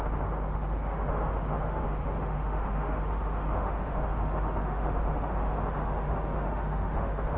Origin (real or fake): fake